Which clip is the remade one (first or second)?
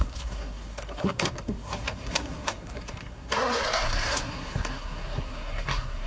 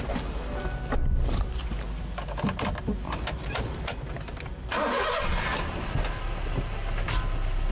first